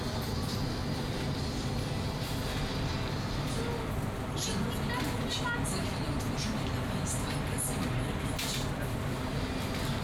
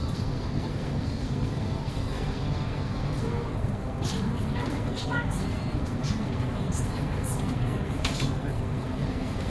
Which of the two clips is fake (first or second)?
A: second